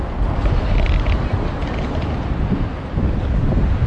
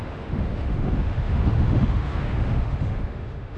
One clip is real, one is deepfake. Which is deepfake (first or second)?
second